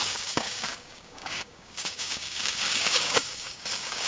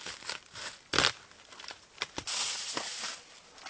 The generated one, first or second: first